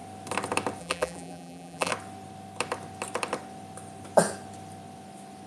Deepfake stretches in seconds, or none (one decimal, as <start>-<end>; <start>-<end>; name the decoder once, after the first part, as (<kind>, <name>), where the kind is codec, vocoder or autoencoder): 0.8-1.9 (vocoder, BigVGAN v2)